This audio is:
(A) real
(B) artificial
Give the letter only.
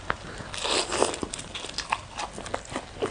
A